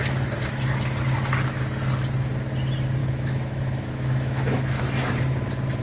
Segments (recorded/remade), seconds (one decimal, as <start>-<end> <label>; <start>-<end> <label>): 0.0-3.0 recorded; 3.0-4.8 remade; 4.8-5.8 recorded